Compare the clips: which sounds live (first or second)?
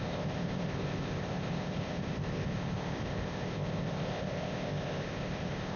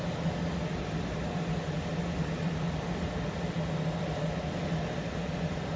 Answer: second